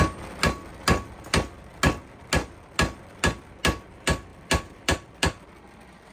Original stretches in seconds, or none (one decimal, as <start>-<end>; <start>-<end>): 0.0-4.3

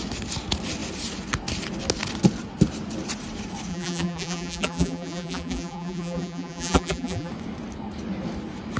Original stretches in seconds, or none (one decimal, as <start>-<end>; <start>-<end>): 0.0-3.7; 7.3-8.8

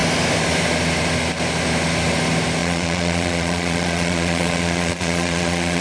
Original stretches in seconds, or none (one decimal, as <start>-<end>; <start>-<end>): 0.0-2.6

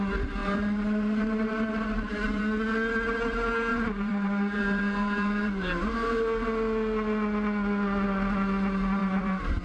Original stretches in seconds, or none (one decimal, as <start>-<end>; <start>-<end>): 0.0-0.4; 2.4-3.7; 5.9-9.0

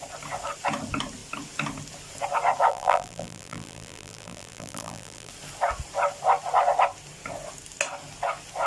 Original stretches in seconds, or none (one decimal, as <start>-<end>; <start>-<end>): 0.0-2.7; 5.3-8.7